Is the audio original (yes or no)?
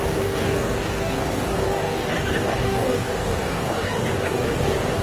no